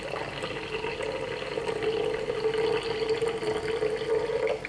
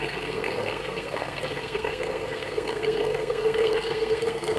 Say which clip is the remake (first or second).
second